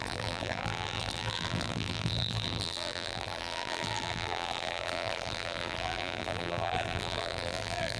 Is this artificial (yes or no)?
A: yes